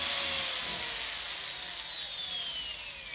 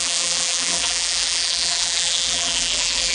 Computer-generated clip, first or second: second